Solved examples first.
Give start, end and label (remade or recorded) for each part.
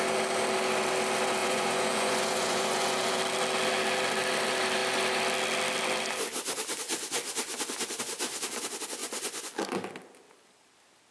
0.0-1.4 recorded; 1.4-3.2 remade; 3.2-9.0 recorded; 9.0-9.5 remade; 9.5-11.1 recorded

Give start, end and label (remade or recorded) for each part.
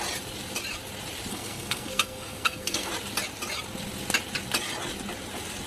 0.0-1.3 recorded; 1.3-2.9 remade; 2.9-5.7 recorded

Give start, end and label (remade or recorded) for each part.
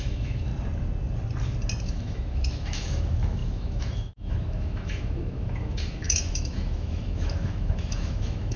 0.0-0.5 remade; 0.5-1.8 recorded; 1.8-8.6 remade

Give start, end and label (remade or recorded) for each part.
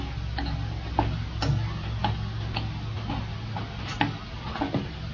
0.0-5.1 recorded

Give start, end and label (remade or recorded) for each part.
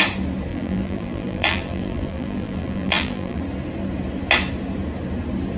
0.0-0.5 recorded; 0.5-3.4 remade; 3.4-5.6 recorded